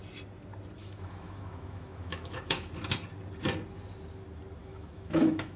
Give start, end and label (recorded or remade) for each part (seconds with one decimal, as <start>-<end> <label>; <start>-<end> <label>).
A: 0.0-0.8 recorded; 0.8-2.7 remade; 2.7-4.6 recorded; 4.6-5.6 remade